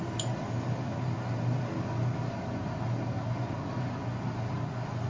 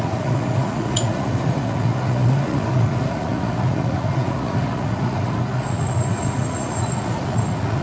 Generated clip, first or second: second